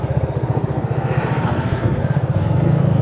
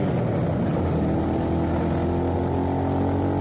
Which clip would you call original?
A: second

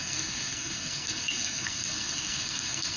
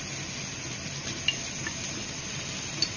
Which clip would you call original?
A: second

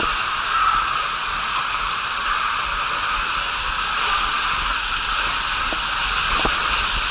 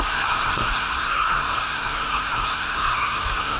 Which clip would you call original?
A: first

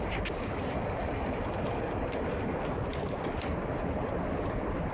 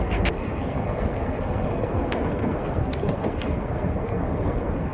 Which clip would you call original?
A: first